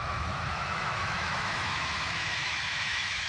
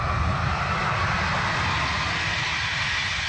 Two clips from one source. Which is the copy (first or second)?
first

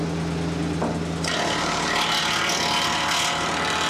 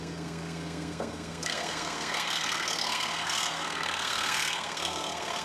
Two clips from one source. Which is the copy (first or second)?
second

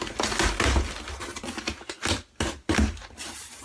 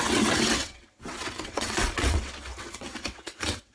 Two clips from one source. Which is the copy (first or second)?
second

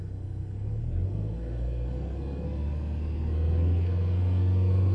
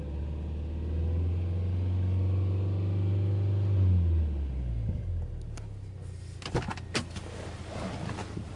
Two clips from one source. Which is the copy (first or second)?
first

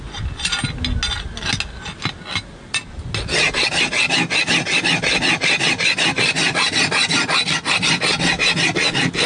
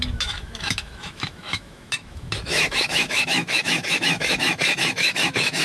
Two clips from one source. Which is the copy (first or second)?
second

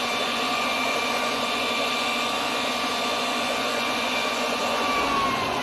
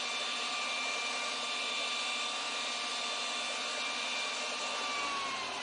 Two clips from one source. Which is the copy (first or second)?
first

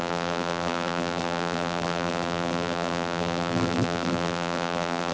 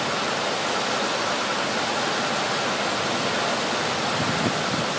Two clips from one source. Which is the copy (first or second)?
first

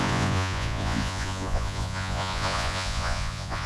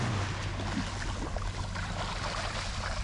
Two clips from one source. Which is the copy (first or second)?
first